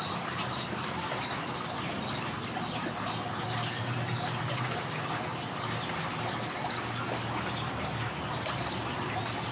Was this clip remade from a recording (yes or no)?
no